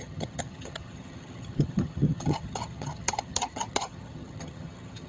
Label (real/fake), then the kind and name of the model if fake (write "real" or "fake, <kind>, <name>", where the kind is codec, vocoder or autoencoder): fake, vocoder, HiFi-GAN